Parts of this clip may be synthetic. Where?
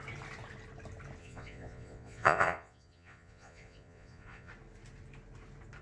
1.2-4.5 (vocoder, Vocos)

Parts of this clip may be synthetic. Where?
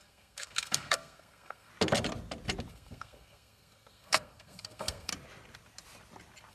0.0-1.7 (codec, SNAC); 2.7-5.1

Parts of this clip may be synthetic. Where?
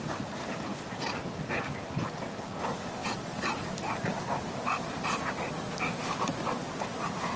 none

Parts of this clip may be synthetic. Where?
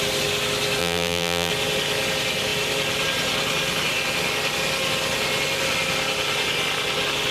0.8-1.5 (vocoder, BigVGAN v2)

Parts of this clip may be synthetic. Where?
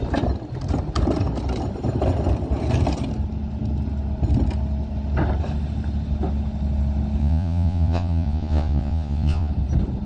7.2-9.5 (vocoder, Vocos)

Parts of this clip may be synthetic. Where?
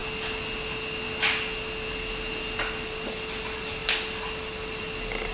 none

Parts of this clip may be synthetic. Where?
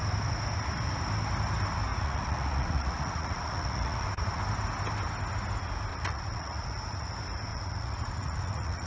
1.9-4.4 (vocoder, Vocos); 5.9-7.1; 7.5-8.9